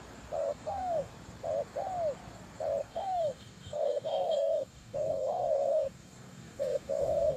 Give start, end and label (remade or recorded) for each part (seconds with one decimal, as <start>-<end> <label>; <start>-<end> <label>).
0.0-0.4 recorded; 0.4-1.1 remade; 1.1-2.8 recorded; 2.8-7.4 remade